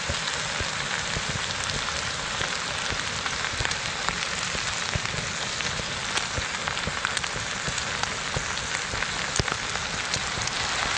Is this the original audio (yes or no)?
yes